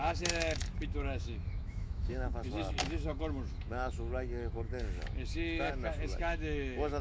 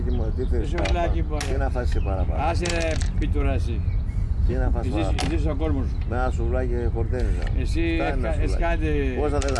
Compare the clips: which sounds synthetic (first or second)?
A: first